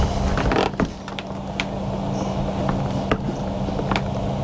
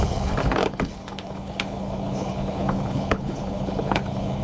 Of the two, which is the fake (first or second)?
second